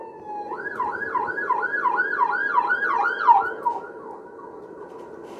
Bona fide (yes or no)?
yes